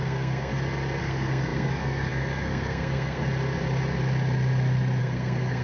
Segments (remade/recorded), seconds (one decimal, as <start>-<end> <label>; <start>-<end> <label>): 0.0-0.5 remade; 0.5-1.0 recorded; 1.0-3.2 remade; 3.2-5.0 recorded; 5.0-5.6 remade